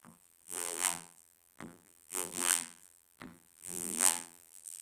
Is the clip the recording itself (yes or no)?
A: no